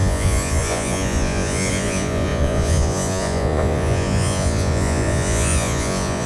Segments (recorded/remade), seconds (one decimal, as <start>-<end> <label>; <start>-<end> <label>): 0.0-6.3 remade